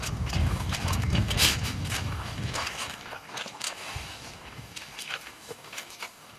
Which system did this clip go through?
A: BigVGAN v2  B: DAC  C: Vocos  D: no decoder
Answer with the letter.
B